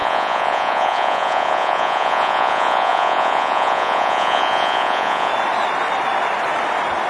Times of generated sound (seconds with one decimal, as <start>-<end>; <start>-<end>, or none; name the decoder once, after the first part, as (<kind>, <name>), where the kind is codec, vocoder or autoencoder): 0.0-5.3 (vocoder, Vocos)